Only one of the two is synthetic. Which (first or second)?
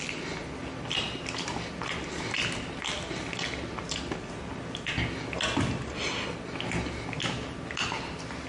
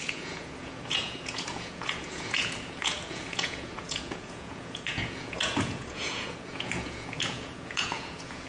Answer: second